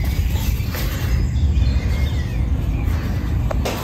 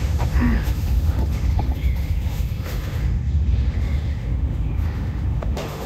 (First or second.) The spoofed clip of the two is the second